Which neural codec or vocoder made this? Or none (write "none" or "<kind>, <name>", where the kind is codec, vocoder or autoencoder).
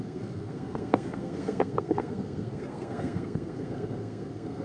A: codec, SNAC